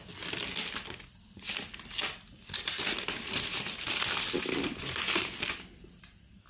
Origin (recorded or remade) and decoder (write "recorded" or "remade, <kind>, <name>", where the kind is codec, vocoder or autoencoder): recorded